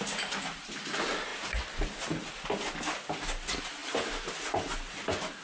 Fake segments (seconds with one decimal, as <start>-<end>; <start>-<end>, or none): none